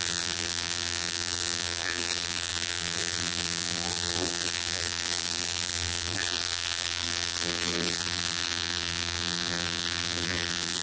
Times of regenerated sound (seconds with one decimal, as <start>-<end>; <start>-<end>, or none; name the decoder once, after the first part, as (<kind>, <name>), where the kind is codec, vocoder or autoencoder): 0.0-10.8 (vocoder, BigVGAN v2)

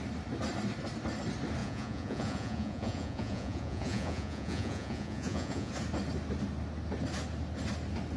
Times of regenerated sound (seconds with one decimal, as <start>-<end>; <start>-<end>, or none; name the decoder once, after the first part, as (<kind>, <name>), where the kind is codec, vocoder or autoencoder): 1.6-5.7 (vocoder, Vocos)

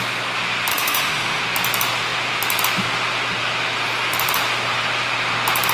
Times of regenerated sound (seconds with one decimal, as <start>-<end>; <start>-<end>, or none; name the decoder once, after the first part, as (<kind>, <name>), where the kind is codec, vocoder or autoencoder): 0.7-1.4 (autoencoder, DAC-VAE)